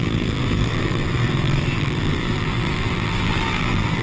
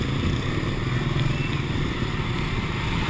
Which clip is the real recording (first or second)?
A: second